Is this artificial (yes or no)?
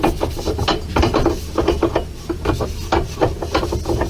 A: no